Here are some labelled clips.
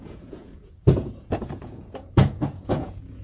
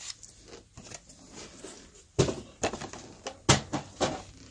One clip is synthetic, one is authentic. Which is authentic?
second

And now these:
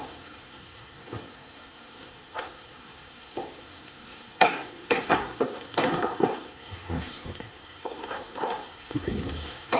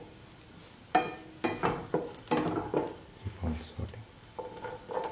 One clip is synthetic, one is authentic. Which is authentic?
second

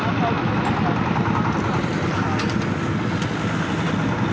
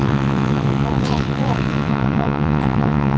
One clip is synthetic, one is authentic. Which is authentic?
first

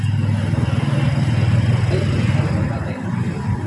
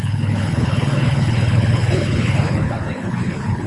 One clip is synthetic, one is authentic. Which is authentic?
first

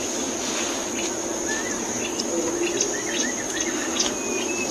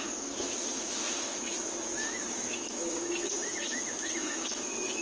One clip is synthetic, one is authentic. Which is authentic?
first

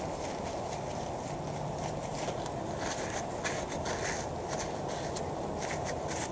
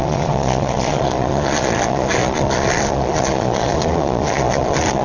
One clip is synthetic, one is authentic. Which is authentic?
first